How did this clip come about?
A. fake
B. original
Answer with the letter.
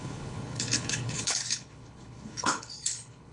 A